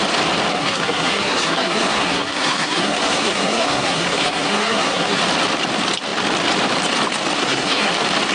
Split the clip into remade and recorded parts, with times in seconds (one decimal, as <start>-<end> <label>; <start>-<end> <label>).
0.0-0.5 recorded; 0.5-5.2 remade; 5.2-7.4 recorded; 7.4-7.9 remade; 7.9-8.3 recorded